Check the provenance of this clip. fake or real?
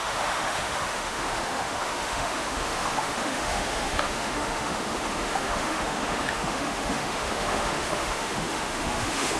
fake